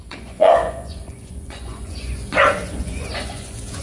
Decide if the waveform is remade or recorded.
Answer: remade